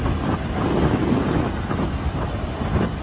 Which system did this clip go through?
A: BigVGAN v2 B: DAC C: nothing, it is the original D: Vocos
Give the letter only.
C